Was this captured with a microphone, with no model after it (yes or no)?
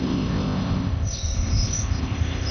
no